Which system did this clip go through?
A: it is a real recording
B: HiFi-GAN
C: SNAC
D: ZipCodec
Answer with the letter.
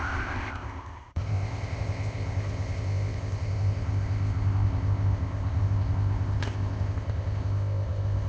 D